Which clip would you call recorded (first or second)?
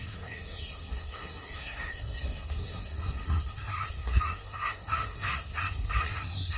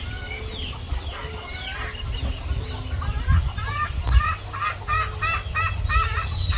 second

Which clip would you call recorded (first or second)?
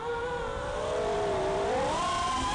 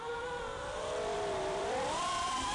first